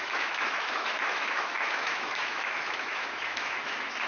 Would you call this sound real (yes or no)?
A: no